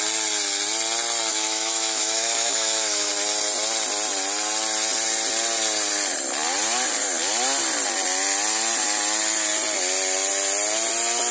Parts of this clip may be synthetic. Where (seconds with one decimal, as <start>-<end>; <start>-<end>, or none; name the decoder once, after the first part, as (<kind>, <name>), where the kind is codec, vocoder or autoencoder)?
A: 1.3-3.1 (autoencoder, DAC-VAE)